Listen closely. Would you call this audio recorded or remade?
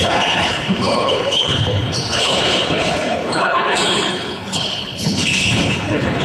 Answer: remade